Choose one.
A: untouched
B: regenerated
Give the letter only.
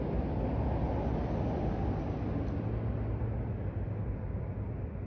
A